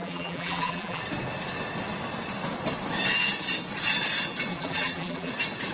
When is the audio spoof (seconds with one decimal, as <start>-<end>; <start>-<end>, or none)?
0.0-1.0; 4.5-5.3